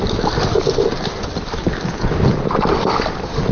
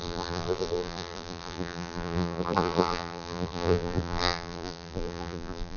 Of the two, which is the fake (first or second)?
second